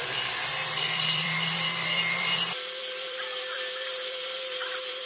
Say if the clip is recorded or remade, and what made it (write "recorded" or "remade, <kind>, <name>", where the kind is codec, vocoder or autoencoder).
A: remade, vocoder, BigVGAN v2